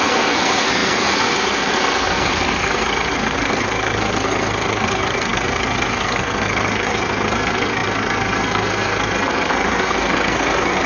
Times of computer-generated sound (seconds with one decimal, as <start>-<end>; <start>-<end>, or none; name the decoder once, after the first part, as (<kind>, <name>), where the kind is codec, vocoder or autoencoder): 0.0-10.9 (codec, SNAC)